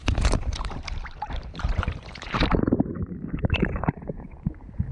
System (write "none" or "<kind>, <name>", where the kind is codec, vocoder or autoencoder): vocoder, BigVGAN v2